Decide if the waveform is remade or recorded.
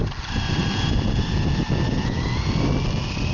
recorded